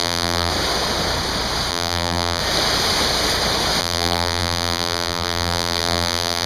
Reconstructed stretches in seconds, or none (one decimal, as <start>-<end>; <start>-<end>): 0.0-0.5; 1.7-2.4; 3.8-6.5